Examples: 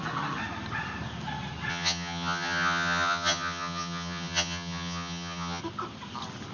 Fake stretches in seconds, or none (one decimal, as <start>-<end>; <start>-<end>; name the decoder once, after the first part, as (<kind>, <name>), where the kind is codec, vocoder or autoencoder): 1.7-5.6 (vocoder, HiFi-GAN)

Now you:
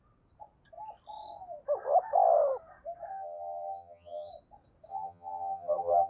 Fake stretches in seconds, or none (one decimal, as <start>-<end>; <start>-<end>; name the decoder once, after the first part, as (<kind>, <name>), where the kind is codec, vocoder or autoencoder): 3.1-4.3 (vocoder, HiFi-GAN); 4.9-6.1

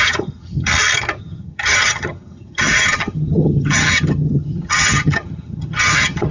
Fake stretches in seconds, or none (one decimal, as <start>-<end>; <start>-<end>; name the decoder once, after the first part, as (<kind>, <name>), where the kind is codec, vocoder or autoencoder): 0.0-0.7 (vocoder, HiFi-GAN); 1.2-6.3

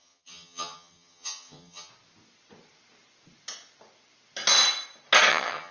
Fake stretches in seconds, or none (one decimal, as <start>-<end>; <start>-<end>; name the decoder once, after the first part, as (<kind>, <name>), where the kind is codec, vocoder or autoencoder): 0.0-1.9 (vocoder, HiFi-GAN); 5.3-5.7

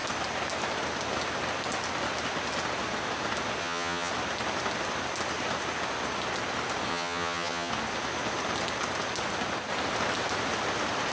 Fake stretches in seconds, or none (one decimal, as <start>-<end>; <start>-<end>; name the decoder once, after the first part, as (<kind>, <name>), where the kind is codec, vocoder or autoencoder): 3.6-4.1 (vocoder, HiFi-GAN); 6.9-7.7

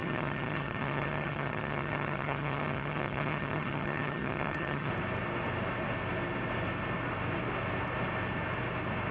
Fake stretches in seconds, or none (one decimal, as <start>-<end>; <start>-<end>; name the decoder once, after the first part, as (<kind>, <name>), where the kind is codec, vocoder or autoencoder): 0.0-4.9 (vocoder, HiFi-GAN)

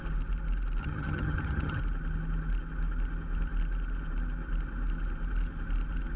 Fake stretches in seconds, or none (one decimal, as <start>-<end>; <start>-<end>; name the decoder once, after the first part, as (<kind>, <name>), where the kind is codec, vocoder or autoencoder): 0.8-1.8 (vocoder, HiFi-GAN)